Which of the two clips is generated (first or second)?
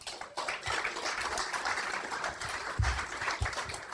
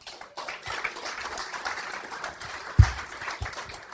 first